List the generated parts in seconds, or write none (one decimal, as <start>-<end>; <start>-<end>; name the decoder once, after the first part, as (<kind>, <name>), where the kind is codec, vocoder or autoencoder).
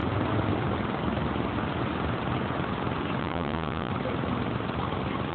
3.2-3.9 (vocoder, Vocos)